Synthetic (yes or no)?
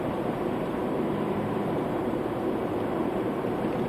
yes